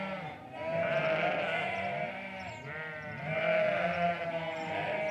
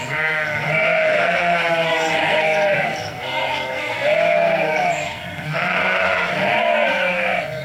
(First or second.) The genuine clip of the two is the first